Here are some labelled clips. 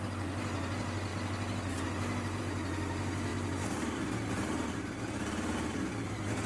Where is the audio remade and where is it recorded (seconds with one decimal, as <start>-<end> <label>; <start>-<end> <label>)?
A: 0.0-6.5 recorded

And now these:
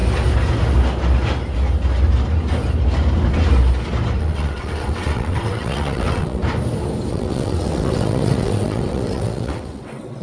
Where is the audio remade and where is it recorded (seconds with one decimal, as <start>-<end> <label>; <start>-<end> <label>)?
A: 0.0-4.2 recorded; 4.2-6.4 remade; 6.4-7.1 recorded; 7.1-10.2 remade

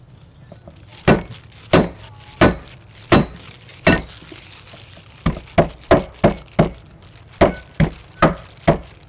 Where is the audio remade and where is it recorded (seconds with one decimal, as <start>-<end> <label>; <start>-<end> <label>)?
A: 0.0-9.1 recorded

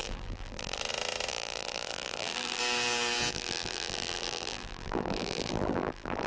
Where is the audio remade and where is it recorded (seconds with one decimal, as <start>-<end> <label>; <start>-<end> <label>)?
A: 0.0-0.8 remade; 0.8-1.3 recorded; 1.3-2.6 remade; 2.6-3.3 recorded; 3.3-6.3 remade

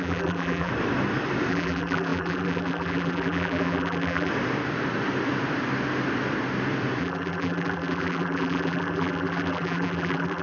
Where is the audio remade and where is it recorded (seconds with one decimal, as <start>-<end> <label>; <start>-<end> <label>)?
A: 0.0-0.7 remade; 0.7-1.5 recorded; 1.5-4.3 remade; 4.3-7.0 recorded; 7.0-10.4 remade

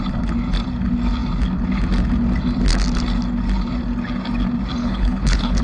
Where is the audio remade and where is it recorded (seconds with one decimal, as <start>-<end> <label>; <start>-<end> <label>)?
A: 0.0-4.8 recorded; 4.8-5.6 remade